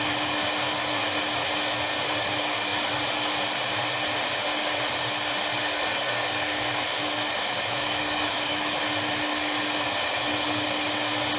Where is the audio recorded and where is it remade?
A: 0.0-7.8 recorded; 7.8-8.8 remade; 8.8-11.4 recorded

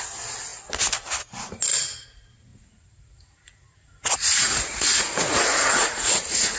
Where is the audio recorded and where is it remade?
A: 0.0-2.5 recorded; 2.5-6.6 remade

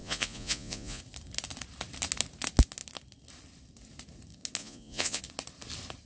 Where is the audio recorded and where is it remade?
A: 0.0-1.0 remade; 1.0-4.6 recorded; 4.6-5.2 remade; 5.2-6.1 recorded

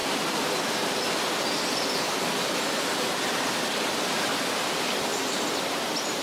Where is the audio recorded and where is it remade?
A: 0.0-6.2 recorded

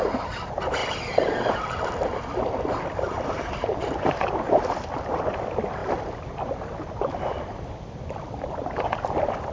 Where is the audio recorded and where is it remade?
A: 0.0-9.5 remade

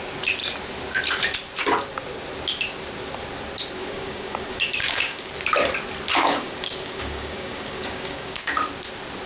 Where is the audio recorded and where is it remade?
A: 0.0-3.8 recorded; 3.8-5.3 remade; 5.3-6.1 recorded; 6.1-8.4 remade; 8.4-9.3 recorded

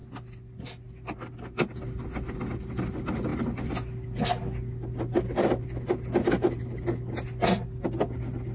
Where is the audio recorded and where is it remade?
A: 0.0-8.5 recorded